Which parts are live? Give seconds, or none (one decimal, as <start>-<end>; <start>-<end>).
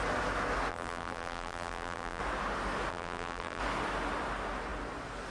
0.0-0.7; 2.2-2.9; 3.6-5.3